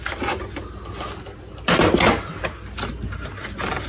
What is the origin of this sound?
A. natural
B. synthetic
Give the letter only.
A